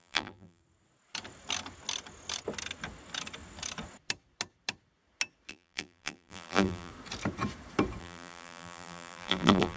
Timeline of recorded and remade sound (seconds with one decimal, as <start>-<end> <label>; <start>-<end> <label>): 0.0-0.6 remade; 0.6-5.5 recorded; 5.5-6.9 remade; 6.9-8.0 recorded; 8.0-9.8 remade